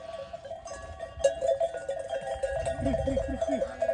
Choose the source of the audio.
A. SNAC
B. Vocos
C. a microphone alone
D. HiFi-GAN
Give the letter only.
C